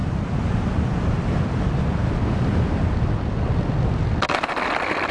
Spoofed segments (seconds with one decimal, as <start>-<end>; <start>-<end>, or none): none